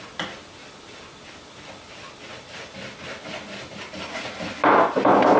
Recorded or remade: recorded